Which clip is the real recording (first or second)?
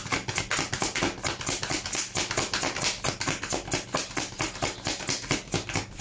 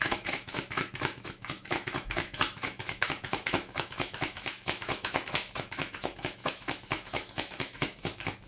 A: first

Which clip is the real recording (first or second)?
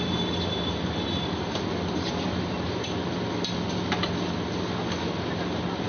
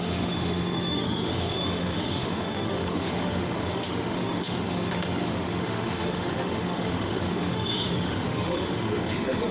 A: first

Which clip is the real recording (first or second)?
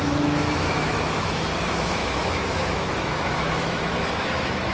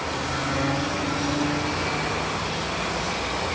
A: second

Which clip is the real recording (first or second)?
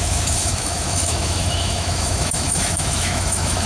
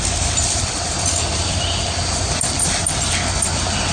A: second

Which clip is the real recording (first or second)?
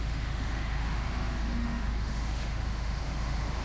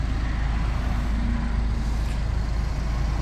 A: second